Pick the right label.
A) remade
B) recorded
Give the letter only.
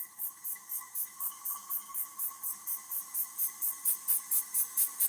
A